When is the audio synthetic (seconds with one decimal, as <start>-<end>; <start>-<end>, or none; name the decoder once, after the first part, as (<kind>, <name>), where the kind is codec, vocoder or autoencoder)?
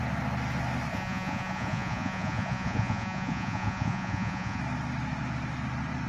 0.9-4.6 (vocoder, Vocos)